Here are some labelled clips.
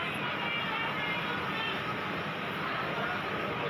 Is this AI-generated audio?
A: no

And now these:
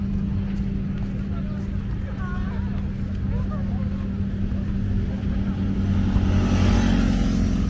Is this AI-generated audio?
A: no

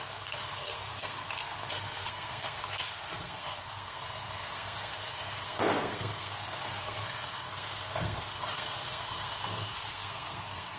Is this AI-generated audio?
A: yes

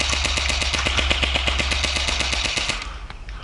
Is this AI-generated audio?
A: no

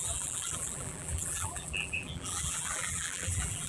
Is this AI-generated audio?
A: yes